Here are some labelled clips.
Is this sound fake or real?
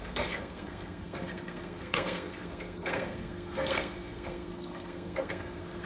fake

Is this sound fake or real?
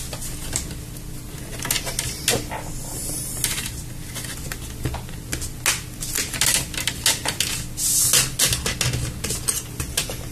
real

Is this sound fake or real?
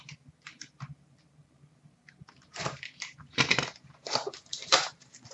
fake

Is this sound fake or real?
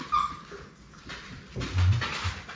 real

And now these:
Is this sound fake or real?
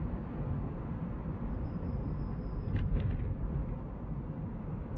real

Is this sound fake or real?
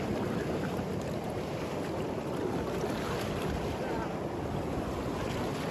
fake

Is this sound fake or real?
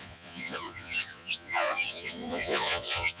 fake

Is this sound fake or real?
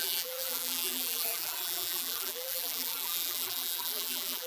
fake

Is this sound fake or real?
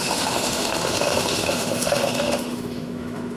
fake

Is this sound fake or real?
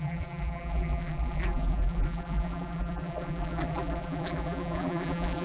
fake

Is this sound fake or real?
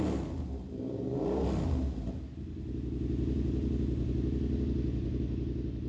real